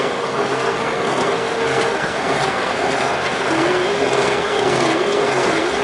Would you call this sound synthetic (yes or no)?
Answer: yes